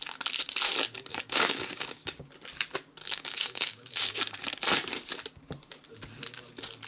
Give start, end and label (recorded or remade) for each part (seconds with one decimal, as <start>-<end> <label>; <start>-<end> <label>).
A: 0.0-1.1 recorded; 1.1-2.3 remade; 2.3-3.0 recorded; 3.0-4.4 remade; 4.4-6.9 recorded